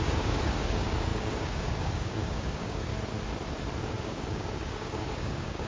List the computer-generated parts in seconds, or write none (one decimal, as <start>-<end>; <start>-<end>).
0.0-2.9; 3.8-5.7